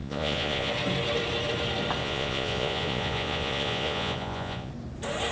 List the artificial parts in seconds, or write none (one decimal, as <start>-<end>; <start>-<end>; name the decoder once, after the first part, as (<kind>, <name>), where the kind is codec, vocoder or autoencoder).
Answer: 0.0-0.7 (vocoder, Vocos); 2.0-4.7